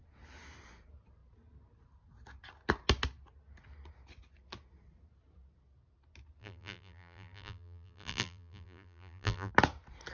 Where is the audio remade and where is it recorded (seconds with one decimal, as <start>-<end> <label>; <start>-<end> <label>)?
0.0-6.4 recorded; 6.4-9.5 remade; 9.5-10.1 recorded